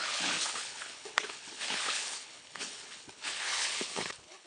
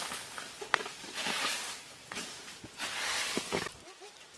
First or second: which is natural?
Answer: second